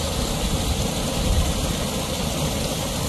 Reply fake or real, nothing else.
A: real